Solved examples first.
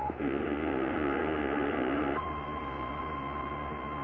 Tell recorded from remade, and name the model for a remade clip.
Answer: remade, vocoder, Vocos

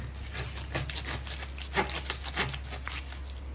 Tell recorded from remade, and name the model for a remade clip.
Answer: recorded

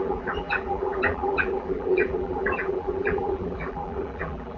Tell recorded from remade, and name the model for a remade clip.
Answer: remade, vocoder, BigVGAN v2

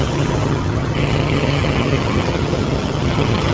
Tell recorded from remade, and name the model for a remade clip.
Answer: remade, vocoder, HiFi-GAN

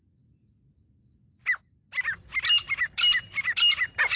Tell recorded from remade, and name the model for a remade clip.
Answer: recorded